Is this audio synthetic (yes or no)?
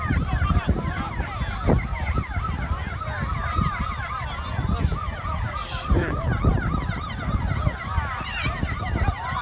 no